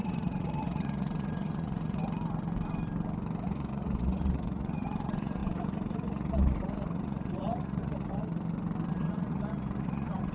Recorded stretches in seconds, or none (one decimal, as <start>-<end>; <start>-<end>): 2.0-3.4; 8.2-8.9